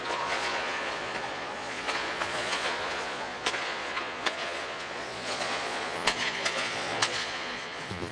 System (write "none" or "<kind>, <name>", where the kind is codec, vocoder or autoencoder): vocoder, Vocos